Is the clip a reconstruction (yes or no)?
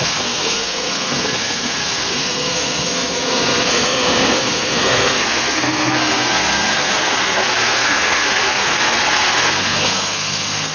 yes